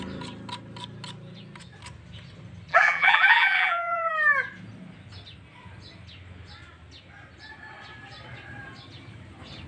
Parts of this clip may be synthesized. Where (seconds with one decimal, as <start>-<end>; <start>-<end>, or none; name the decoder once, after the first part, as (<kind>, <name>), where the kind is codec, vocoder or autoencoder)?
2.7-4.1 (vocoder, BigVGAN v2)